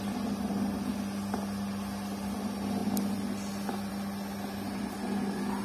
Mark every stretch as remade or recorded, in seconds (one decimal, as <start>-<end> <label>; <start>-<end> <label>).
0.0-5.6 recorded